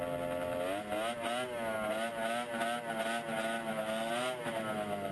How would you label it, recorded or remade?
recorded